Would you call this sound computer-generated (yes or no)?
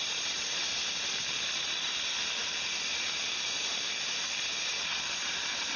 no